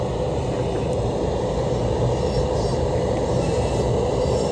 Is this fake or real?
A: fake